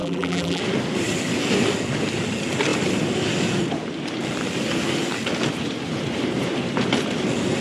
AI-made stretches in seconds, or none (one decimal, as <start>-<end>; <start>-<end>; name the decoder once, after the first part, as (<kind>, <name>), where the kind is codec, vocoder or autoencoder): 0.0-0.6 (vocoder, BigVGAN v2)